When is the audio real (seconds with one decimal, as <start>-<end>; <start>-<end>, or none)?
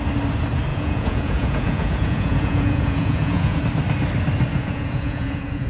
0.0-0.7; 3.6-4.5